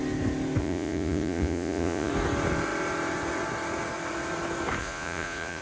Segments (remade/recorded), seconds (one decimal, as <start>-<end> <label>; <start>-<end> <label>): 0.0-0.6 recorded; 0.6-2.1 remade; 2.1-4.8 recorded; 4.8-5.6 remade